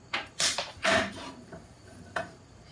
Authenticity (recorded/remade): remade